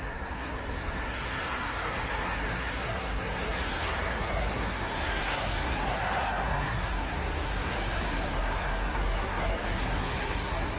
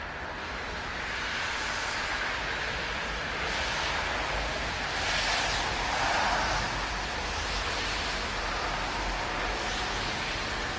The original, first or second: second